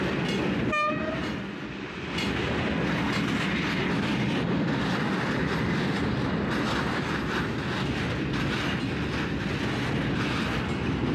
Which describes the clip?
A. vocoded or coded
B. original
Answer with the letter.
B